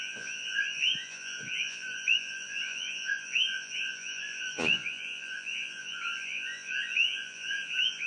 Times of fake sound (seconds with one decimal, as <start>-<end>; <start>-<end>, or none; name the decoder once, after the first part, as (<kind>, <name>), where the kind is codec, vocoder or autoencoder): 0.0-8.1 (vocoder, Vocos)